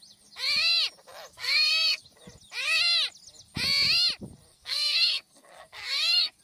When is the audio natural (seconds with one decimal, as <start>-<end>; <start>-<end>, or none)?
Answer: 0.0-1.3; 2.0-4.5

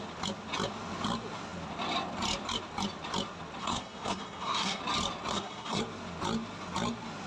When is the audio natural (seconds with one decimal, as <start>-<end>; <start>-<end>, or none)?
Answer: 0.0-3.6; 4.8-5.3; 5.8-7.3

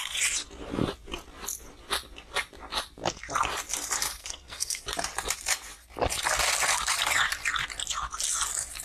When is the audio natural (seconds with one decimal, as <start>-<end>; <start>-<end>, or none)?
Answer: 0.0-4.2; 4.8-8.8

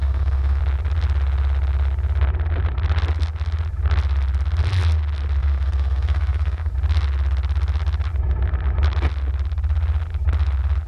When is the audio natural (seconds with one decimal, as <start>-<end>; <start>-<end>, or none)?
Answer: 0.6-5.4; 6.7-10.9

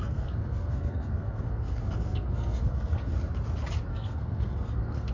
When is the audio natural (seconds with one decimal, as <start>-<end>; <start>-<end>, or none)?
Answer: 3.1-3.9

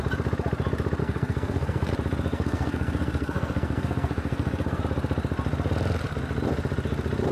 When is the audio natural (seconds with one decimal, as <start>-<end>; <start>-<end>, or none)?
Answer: 0.0-1.0; 1.9-2.3; 4.8-7.3